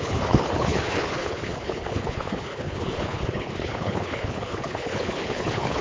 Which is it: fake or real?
fake